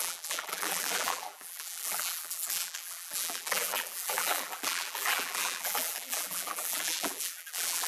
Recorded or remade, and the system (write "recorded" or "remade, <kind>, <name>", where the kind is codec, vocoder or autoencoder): remade, vocoder, BigVGAN v2